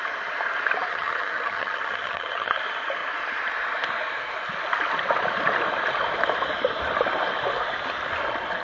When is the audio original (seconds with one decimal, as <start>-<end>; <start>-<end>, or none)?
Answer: 0.0-0.9; 2.6-8.6